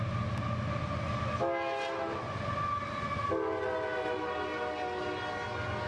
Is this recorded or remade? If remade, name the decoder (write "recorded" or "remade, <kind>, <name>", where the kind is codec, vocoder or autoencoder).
recorded